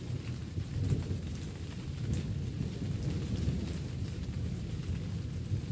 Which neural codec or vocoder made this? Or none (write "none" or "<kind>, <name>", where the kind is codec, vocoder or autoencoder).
none